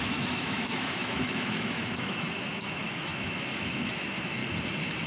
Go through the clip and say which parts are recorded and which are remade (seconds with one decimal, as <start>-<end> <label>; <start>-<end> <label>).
0.0-4.4 remade; 4.4-5.1 recorded